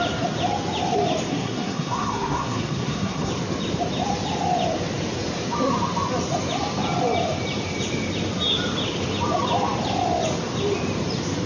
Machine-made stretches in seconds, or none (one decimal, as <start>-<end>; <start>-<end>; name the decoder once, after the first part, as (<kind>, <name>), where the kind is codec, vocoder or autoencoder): 1.3-3.3 (codec, SNAC)